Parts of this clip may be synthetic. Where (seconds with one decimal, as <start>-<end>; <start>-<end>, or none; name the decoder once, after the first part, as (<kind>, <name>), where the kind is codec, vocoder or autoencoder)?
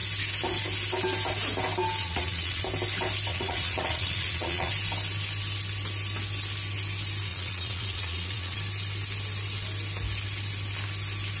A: 2.0-2.6 (vocoder, Vocos); 3.3-4.7; 7.3-8.6